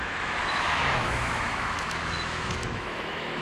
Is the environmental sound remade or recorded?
remade